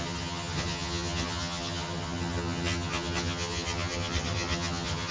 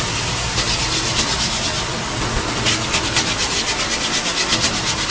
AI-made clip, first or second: first